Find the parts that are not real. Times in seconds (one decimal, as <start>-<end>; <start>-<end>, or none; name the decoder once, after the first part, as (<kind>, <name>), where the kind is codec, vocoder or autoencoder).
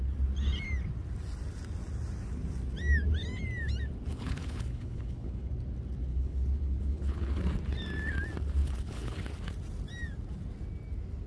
4.1-5.5 (codec, HILCodec); 6.1-7.4; 8.6-9.2